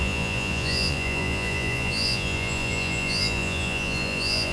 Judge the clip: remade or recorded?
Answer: remade